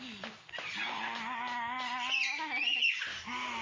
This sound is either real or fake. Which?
real